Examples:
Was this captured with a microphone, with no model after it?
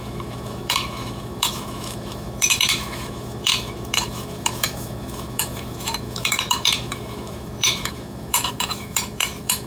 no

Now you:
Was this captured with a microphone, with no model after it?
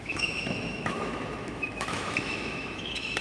no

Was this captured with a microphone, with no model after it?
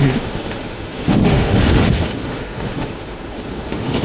no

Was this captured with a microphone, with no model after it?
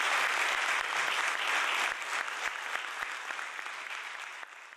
yes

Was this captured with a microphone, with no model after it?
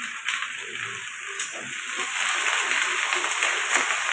yes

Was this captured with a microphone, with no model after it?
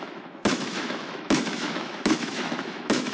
no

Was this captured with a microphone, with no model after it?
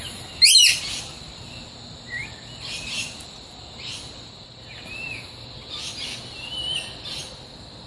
yes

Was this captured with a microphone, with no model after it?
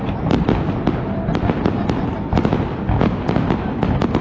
yes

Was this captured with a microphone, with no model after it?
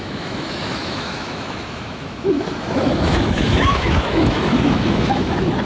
no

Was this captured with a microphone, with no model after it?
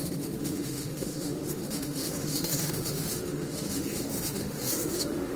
no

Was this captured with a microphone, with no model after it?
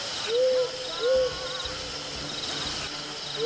yes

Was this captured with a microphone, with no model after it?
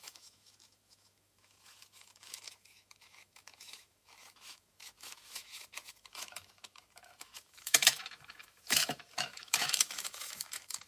no